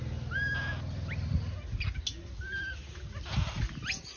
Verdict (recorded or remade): recorded